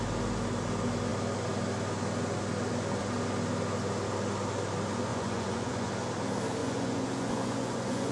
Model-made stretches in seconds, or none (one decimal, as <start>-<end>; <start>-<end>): 5.1-5.9; 6.6-8.1